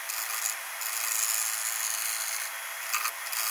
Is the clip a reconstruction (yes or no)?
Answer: no